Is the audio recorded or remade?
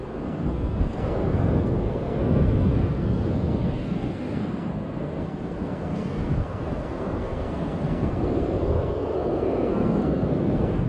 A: remade